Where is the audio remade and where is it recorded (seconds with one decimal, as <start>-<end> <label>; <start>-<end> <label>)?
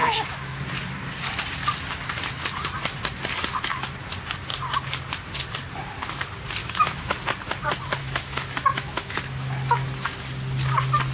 0.0-0.6 remade; 0.6-6.6 recorded; 6.6-7.2 remade; 7.2-8.0 recorded; 8.0-9.2 remade; 9.2-11.1 recorded